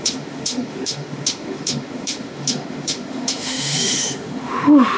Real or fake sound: fake